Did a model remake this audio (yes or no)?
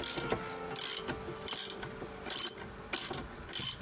no